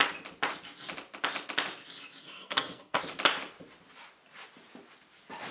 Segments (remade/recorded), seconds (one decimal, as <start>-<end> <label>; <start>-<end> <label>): 0.0-2.2 recorded; 2.2-3.0 remade; 3.0-5.5 recorded